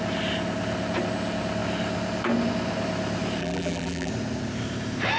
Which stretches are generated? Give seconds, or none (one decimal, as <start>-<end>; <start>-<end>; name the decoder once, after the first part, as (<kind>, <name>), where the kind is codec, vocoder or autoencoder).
3.4-4.1 (vocoder, BigVGAN v2)